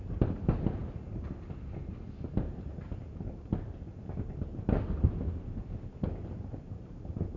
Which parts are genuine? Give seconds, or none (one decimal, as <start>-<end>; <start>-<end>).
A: 0.0-7.4

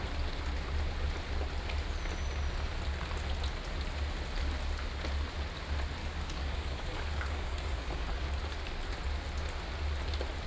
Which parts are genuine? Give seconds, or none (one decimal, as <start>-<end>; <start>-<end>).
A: 0.0-6.0; 8.3-10.5

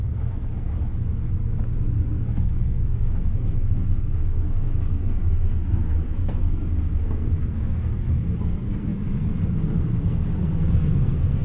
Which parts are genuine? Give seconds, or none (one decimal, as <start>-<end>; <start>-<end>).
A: 0.7-2.1

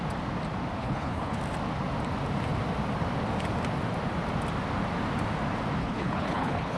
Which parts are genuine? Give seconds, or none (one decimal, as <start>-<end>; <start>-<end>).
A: 0.0-0.8; 1.4-5.8

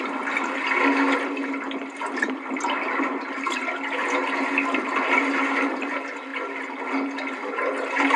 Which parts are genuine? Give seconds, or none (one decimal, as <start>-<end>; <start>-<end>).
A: 0.0-8.2

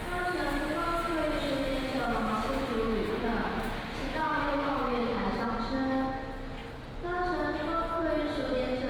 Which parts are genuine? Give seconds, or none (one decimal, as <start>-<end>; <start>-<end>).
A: 0.0-2.0; 5.4-8.9

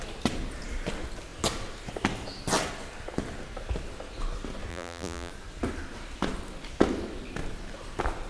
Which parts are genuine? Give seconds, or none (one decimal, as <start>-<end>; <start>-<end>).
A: 0.0-4.7; 5.3-8.3

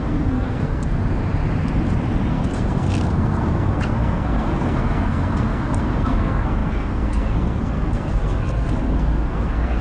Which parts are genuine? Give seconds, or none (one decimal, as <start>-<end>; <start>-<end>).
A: 1.0-2.3